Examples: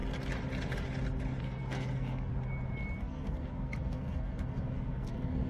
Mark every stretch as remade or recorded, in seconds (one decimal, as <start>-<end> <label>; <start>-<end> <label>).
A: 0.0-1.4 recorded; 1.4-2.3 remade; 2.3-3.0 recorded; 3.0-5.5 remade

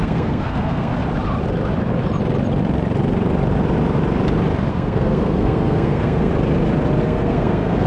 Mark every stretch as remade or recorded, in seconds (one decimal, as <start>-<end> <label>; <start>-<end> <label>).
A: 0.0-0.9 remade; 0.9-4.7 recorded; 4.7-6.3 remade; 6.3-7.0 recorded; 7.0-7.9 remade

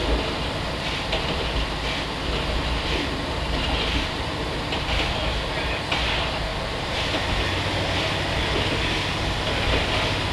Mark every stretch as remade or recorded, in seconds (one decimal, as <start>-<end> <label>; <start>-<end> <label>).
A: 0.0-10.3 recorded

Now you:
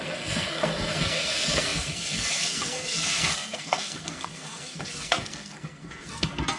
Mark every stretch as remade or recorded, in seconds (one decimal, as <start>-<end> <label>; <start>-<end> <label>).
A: 0.0-6.6 remade